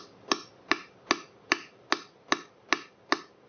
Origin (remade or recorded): recorded